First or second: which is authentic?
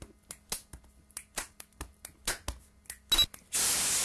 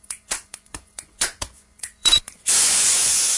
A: first